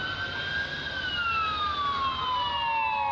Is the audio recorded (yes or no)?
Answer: yes